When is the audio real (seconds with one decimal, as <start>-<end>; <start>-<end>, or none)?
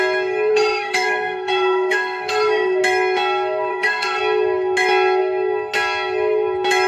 0.0-0.5; 2.8-3.7; 4.2-6.9